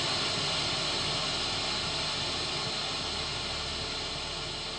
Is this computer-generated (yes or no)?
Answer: no